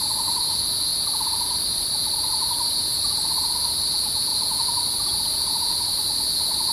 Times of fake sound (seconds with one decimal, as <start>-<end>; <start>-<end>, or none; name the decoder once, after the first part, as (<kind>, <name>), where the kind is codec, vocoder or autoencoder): none